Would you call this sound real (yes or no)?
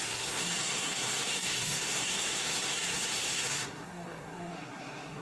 no